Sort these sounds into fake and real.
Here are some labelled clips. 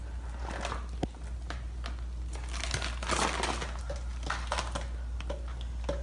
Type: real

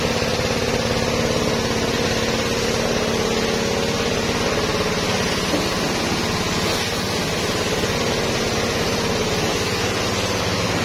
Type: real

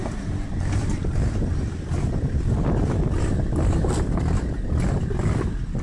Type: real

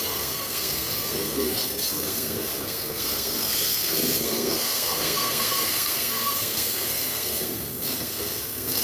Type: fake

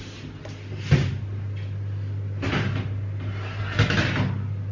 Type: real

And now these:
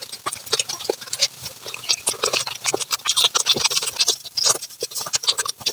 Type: real